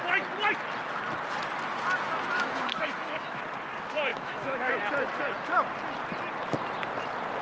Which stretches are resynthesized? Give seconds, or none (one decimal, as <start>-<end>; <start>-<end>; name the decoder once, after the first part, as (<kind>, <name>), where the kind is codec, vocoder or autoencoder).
2.3-3.4 (autoencoder, DAC-VAE); 4.1-4.7